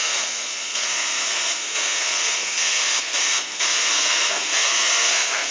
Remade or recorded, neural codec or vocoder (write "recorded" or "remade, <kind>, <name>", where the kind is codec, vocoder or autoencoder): remade, codec, SNAC